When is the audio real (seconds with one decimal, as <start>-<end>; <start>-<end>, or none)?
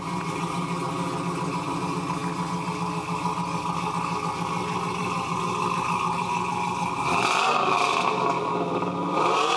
0.0-9.6